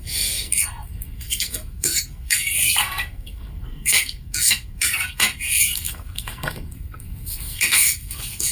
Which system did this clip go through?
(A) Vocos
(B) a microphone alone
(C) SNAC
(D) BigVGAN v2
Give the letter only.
C